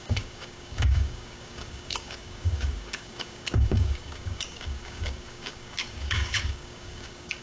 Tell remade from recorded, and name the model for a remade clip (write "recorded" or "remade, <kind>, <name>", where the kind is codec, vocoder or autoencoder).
remade, codec, DAC